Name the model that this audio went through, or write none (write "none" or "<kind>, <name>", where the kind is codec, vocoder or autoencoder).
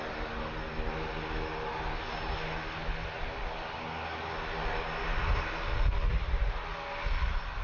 none